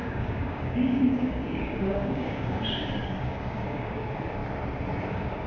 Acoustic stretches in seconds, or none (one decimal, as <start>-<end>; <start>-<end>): 4.4-5.1